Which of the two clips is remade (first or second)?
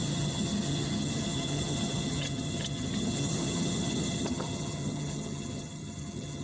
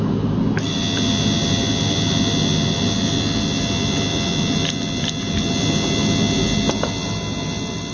first